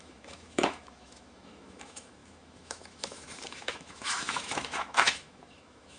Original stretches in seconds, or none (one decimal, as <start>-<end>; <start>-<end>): none